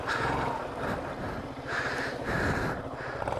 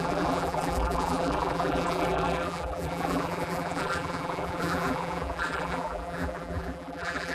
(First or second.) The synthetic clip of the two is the second